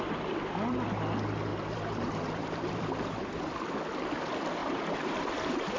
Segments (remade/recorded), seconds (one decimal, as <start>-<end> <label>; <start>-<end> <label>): 0.0-1.5 recorded; 1.5-3.2 remade; 3.2-4.6 recorded; 4.6-5.8 remade